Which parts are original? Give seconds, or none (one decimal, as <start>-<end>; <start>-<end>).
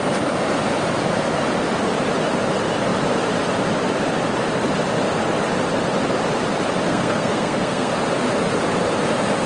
0.0-6.9; 7.9-9.5